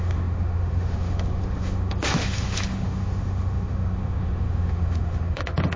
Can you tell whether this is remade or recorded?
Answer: remade